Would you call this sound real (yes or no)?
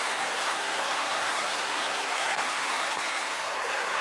no